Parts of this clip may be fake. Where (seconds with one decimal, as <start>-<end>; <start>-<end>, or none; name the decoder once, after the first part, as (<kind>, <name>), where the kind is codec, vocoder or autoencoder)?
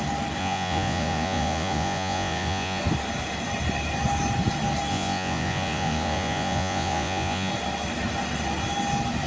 0.4-2.8 (vocoder, Vocos); 4.9-7.5